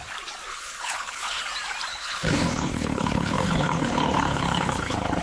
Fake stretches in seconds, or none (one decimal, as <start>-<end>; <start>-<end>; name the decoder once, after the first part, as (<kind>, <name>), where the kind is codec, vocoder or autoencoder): 0.5-1.4 (codec, HILCodec); 1.9-5.2